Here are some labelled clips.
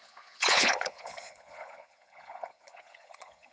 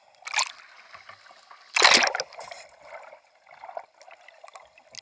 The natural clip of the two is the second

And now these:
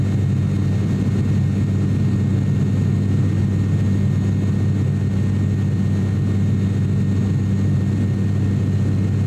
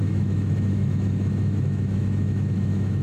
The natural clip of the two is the first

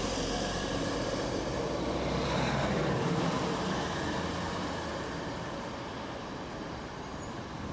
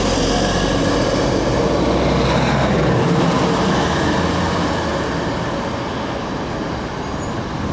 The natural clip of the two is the second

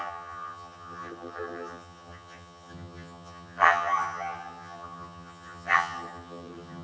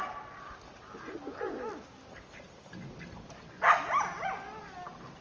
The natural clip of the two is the second